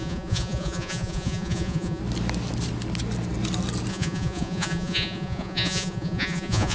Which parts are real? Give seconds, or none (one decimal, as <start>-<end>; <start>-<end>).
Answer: 2.0-3.9